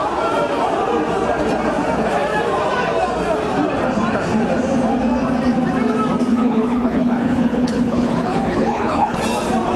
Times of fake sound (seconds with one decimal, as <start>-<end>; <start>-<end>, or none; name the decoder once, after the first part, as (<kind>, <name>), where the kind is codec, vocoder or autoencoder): 6.3-9.2 (codec, HILCodec)